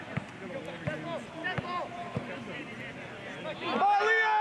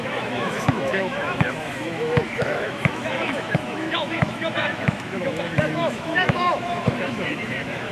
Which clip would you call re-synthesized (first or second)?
second